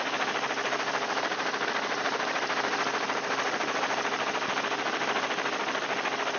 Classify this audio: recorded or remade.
recorded